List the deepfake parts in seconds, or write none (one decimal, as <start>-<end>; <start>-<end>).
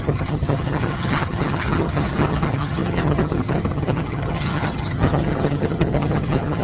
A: 0.0-6.6